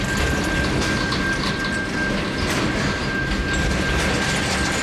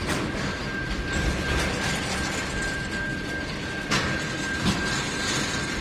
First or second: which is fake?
second